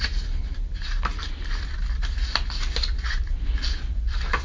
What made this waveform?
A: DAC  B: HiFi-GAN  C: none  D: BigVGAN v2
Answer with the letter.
C